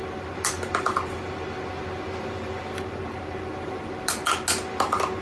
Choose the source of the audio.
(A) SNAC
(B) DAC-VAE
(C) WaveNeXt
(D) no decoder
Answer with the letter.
D